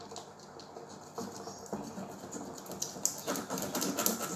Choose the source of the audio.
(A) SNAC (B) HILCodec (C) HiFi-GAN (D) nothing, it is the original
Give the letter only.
D